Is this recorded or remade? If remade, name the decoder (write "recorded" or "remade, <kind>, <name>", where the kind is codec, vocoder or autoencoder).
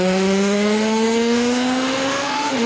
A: remade, autoencoder, DAC-VAE